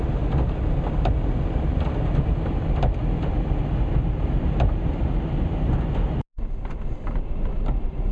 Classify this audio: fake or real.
real